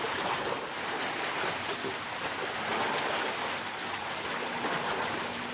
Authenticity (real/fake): real